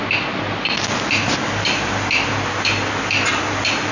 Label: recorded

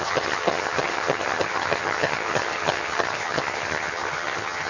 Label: remade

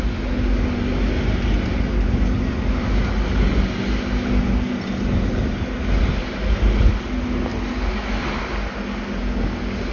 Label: recorded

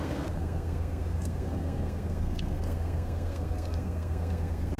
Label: remade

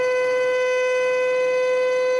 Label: remade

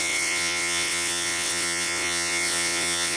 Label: remade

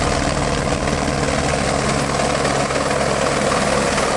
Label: recorded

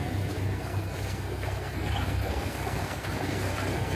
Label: remade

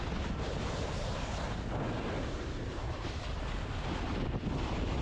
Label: recorded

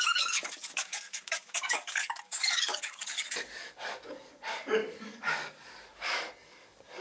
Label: remade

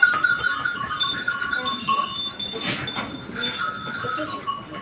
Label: recorded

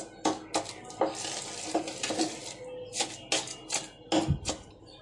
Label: recorded